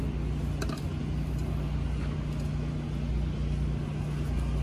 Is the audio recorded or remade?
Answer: recorded